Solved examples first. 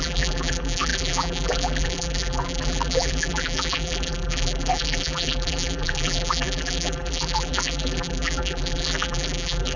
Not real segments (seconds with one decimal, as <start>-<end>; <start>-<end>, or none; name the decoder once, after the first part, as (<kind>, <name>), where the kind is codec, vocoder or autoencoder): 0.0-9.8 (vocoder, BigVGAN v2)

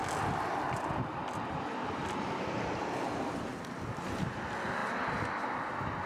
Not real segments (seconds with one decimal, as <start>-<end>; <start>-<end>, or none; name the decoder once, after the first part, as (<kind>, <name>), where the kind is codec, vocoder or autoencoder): 0.0-3.5 (vocoder, BigVGAN v2)

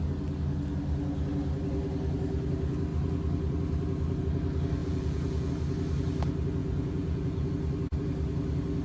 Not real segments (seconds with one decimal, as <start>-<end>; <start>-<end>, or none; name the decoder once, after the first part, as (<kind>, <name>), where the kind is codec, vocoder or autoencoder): 4.8-5.5 (vocoder, Vocos); 6.6-7.5

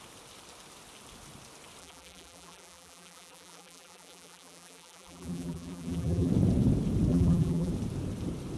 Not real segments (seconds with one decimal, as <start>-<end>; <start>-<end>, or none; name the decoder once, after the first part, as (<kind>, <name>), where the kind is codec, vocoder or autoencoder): 1.8-6.3 (vocoder, BigVGAN v2); 7.1-7.7

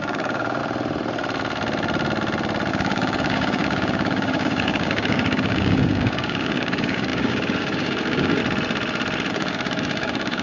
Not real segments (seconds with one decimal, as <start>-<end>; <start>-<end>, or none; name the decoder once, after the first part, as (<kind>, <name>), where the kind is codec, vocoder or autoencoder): 0.0-0.6 (codec, DAC); 2.7-8.4; 9.3-10.4

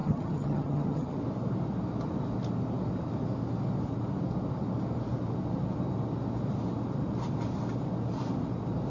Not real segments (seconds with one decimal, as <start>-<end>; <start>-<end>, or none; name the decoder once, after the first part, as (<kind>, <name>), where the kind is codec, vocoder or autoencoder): 0.0-1.2 (vocoder, HiFi-GAN)

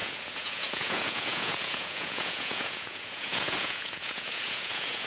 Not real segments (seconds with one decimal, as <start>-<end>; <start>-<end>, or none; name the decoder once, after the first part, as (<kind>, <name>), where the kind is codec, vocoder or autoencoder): 0.0-5.1 (vocoder, Vocos)